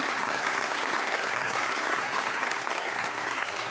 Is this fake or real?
fake